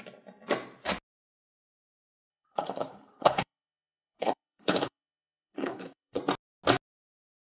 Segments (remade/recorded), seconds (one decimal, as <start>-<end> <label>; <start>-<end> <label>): 0.0-2.3 recorded; 2.3-6.2 remade; 6.2-7.4 recorded